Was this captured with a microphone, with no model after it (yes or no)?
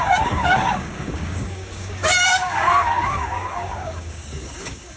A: no